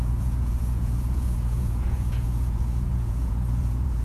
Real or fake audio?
fake